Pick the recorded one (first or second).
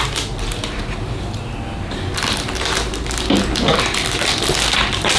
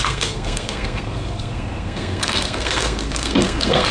first